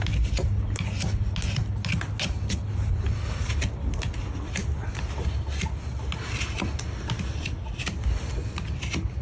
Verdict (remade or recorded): recorded